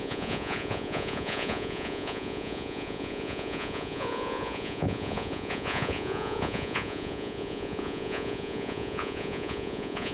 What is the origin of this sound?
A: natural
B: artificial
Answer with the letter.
B